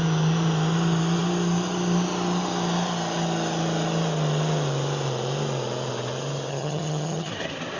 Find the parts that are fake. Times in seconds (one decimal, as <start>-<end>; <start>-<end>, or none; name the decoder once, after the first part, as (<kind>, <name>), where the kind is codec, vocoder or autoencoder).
6.5-7.3 (vocoder, HiFi-GAN)